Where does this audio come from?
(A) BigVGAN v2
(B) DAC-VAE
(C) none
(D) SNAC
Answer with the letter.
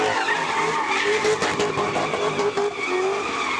C